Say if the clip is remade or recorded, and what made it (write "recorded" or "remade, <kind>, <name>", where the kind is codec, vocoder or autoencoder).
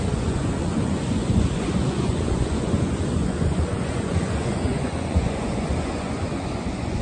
remade, vocoder, Vocos